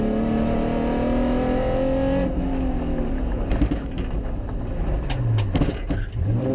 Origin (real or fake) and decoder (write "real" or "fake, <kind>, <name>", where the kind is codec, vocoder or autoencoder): real